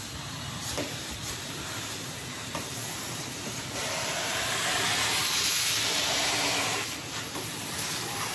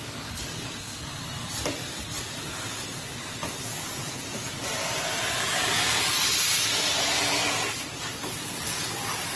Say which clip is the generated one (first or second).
first